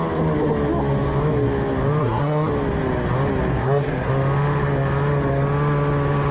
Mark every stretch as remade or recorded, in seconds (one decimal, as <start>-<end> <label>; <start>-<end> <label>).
0.0-2.0 recorded; 2.0-2.5 remade; 2.5-3.5 recorded; 3.5-4.1 remade; 4.1-6.3 recorded